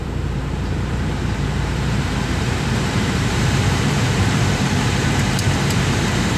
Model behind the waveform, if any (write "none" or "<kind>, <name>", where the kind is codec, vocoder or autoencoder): vocoder, BigVGAN v2